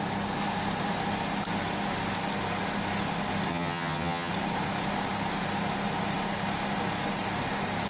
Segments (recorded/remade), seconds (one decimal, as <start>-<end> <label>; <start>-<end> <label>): 0.0-3.5 recorded; 3.5-4.3 remade; 4.3-7.9 recorded